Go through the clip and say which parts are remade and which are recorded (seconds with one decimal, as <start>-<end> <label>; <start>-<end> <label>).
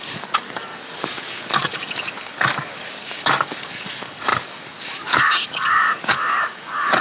0.0-7.0 remade